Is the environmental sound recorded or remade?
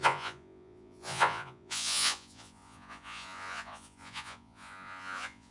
remade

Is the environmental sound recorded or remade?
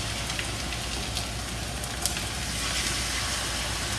recorded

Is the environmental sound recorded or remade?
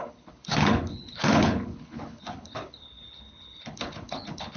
remade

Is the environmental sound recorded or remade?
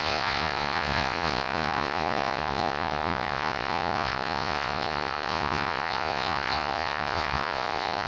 remade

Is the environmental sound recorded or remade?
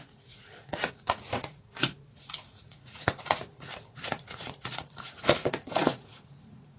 remade